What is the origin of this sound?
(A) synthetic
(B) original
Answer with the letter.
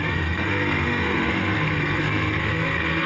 A